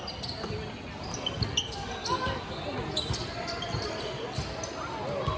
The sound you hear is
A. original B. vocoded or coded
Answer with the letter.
A